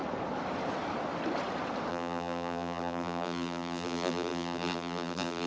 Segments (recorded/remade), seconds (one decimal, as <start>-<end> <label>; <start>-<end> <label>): 0.0-1.9 recorded; 1.9-5.5 remade